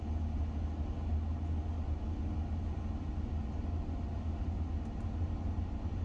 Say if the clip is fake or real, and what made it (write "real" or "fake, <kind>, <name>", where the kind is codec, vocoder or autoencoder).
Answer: real